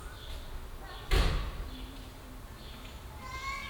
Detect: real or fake real